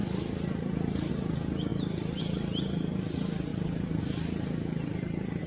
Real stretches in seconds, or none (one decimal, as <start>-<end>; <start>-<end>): 0.0-5.5